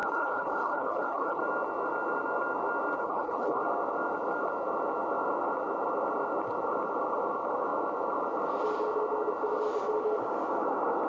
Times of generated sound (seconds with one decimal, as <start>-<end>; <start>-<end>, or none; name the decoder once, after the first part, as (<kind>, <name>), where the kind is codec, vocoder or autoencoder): 0.0-1.4 (codec, HILCodec); 3.0-3.6